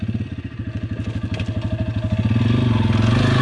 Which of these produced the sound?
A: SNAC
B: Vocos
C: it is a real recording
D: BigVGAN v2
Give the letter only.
C